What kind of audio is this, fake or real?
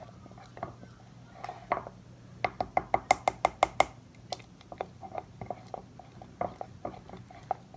real